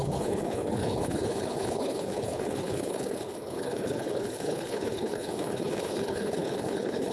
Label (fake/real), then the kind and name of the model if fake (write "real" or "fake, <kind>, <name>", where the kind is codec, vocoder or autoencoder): fake, codec, HILCodec